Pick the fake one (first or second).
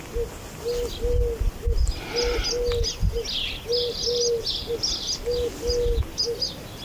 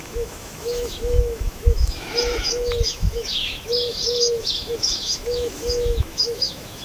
second